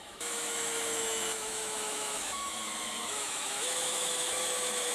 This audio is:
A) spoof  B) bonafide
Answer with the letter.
A